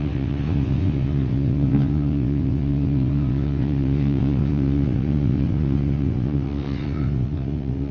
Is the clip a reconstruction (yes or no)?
yes